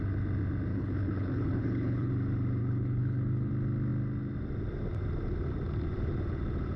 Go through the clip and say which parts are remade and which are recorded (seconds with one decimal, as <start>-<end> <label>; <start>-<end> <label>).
0.0-0.7 recorded; 0.7-2.1 remade; 2.1-2.6 recorded; 2.6-3.5 remade; 3.5-6.8 recorded